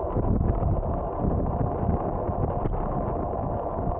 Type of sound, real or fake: real